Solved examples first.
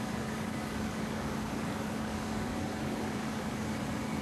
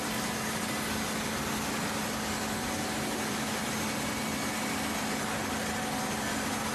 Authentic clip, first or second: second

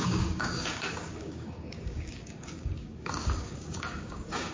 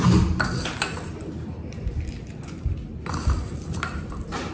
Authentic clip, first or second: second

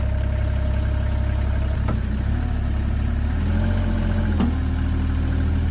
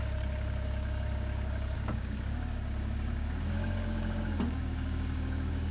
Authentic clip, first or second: first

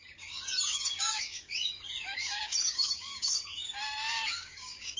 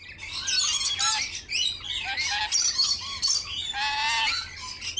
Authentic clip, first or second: second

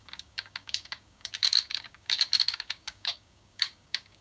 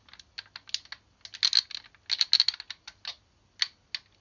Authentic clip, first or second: second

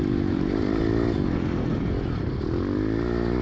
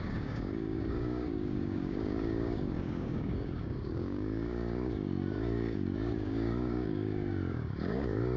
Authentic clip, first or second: first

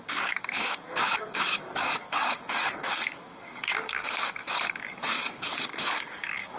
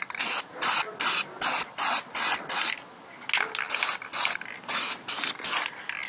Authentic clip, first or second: second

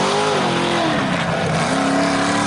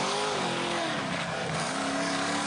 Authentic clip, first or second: first